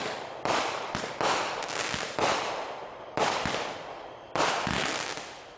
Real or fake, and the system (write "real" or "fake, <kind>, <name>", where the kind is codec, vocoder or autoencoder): real